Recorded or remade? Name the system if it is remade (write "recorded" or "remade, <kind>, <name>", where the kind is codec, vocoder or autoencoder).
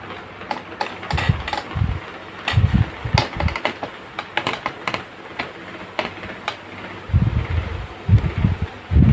recorded